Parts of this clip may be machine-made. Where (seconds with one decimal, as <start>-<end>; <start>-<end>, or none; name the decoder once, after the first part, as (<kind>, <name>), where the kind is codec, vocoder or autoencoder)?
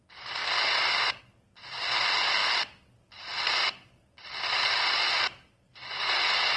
0.4-1.2 (vocoder, BigVGAN v2); 2.4-6.6